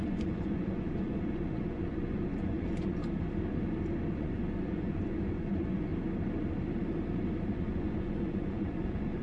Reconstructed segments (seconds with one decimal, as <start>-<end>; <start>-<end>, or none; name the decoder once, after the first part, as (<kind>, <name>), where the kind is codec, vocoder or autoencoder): 0.0-3.0 (vocoder, Vocos); 4.1-5.9; 7.5-9.2